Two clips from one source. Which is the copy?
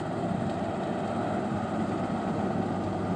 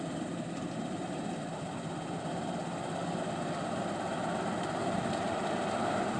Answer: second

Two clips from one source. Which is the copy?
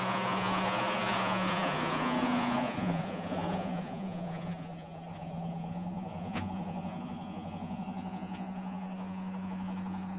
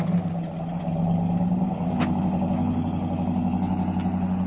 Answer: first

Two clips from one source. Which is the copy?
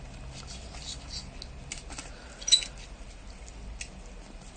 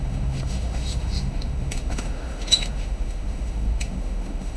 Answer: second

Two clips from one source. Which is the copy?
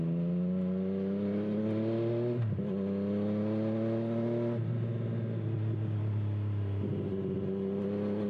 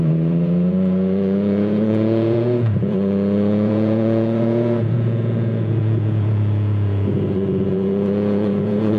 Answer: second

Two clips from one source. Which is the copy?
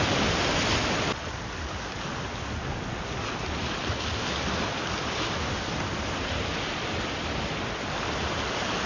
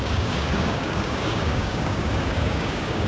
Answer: second